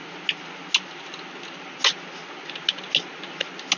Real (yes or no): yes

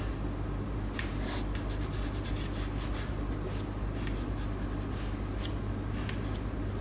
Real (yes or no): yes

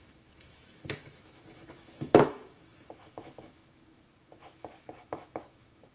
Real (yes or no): no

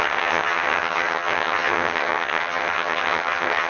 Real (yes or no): no